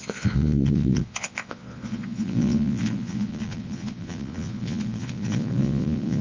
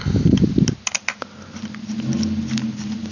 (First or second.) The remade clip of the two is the first